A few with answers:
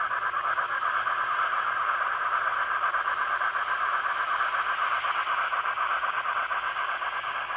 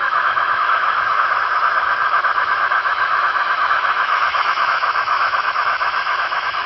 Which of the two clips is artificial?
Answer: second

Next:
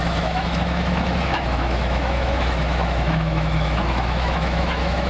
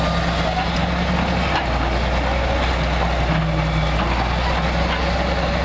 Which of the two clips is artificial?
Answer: first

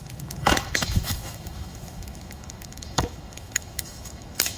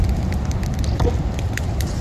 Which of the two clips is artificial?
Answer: first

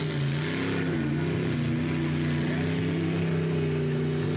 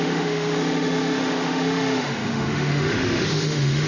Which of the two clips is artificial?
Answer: second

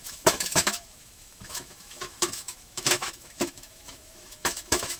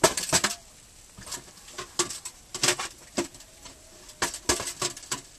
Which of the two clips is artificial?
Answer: first